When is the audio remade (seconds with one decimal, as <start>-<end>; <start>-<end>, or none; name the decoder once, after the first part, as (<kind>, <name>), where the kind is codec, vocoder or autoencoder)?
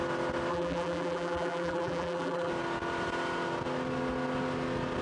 0.5-2.5 (vocoder, BigVGAN v2)